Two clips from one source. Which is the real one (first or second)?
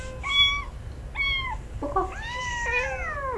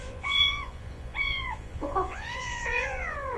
first